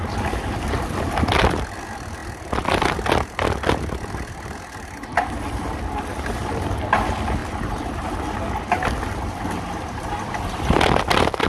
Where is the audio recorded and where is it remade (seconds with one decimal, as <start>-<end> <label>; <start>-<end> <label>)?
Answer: 0.0-11.5 recorded